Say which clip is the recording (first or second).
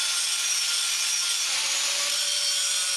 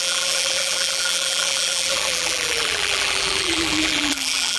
first